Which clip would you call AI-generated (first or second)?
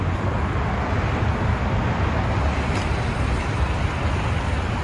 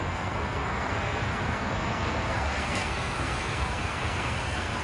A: second